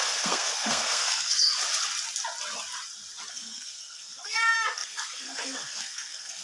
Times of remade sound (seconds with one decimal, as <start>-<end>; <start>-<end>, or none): 0.0-1.5; 3.3-6.4